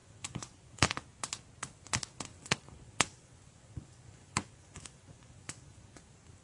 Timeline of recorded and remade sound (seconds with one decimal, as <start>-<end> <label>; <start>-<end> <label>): 0.0-1.0 remade; 1.0-2.3 recorded; 2.3-6.0 remade; 6.0-6.4 recorded